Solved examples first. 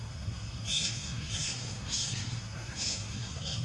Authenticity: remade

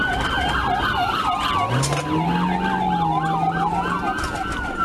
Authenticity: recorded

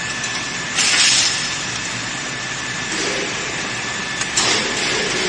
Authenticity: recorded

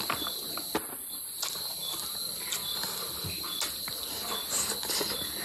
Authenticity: recorded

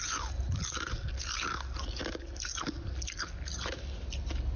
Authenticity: recorded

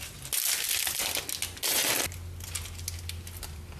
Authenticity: recorded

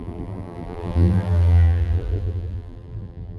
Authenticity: remade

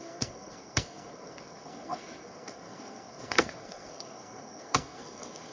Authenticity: remade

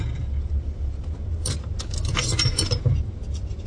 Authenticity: recorded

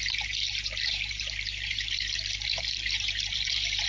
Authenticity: remade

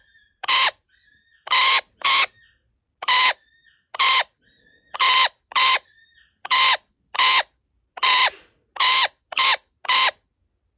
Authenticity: recorded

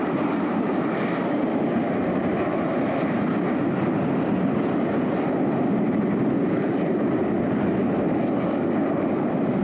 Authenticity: recorded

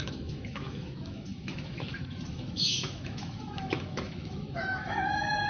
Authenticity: remade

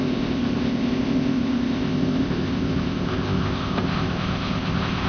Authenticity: remade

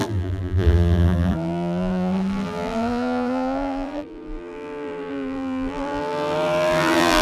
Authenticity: remade